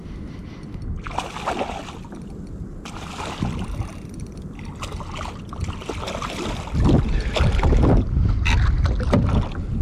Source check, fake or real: real